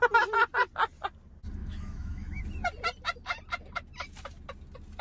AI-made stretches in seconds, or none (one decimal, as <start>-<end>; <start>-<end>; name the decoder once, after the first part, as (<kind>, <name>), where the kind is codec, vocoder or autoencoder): 1.6-2.4 (autoencoder, DAC-VAE)